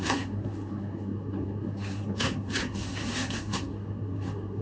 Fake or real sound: fake